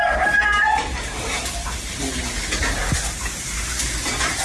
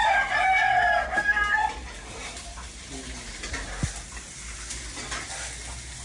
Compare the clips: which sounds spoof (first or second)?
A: first